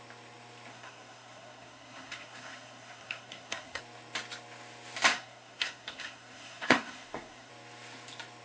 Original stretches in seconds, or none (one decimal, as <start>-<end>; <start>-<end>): 0.0-0.7; 3.8-5.1; 7.5-8.4